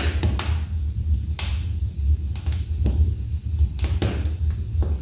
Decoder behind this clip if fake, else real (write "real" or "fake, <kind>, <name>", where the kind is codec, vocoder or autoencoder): real